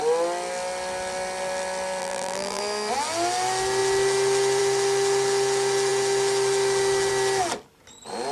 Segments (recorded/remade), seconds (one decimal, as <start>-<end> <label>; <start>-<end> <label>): 0.0-2.0 recorded; 2.0-2.6 remade; 2.6-8.3 recorded